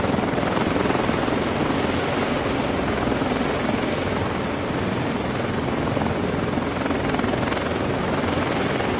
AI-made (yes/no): no